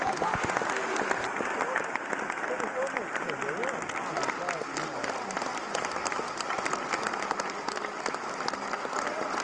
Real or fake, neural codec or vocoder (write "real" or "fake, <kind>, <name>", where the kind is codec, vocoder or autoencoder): real